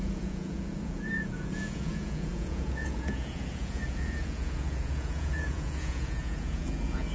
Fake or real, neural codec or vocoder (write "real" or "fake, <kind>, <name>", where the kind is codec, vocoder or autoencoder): fake, vocoder, Vocos